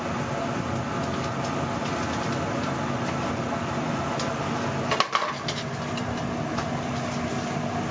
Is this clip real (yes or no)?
yes